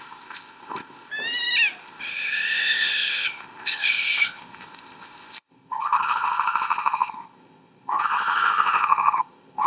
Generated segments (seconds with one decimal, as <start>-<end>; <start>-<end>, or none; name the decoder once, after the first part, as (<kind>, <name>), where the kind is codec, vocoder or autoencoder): 0.0-1.1 (codec, ZipCodec); 1.8-9.7